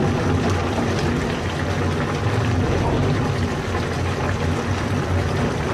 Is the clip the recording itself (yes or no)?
yes